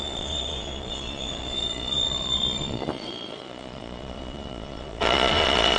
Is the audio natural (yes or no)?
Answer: no